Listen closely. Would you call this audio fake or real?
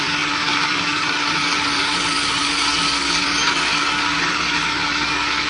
fake